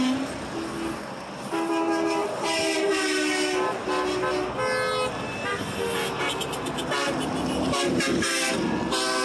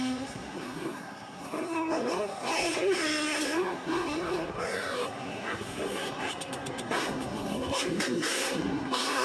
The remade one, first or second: second